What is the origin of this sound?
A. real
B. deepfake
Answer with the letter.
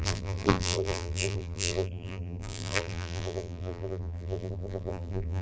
B